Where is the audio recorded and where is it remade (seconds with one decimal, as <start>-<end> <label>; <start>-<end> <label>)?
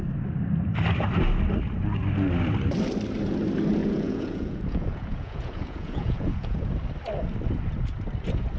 0.0-3.8 recorded; 3.8-6.7 remade; 6.7-8.6 recorded